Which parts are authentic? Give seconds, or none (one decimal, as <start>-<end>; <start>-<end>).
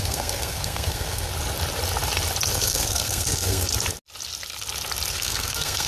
1.3-2.5; 3.7-5.1